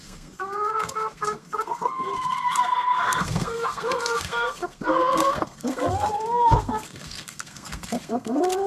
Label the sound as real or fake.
fake